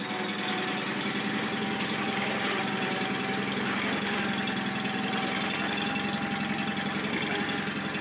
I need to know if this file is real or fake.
real